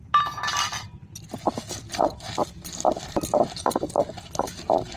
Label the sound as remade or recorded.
recorded